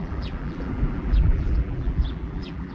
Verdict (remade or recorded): remade